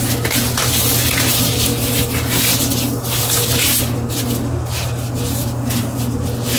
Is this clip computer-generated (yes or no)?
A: no